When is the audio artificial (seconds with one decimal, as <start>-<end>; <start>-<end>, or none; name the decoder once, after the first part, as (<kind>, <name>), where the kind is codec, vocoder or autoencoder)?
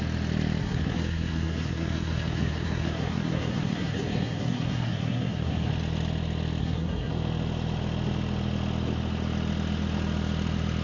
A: 0.6-5.7 (codec, SNAC); 6.6-7.1